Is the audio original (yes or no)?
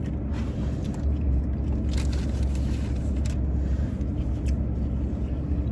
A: yes